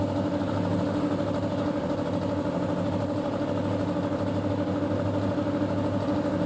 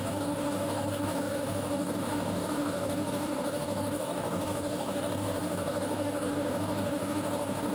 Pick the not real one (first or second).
second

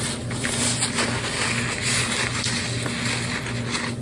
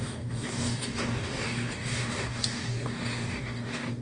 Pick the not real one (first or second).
second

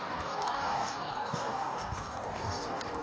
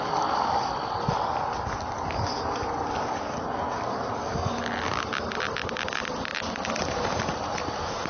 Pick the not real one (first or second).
first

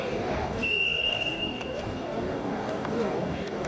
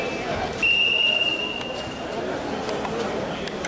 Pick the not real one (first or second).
first